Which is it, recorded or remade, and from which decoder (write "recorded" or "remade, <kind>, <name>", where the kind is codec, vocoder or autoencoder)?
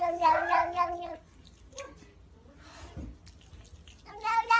recorded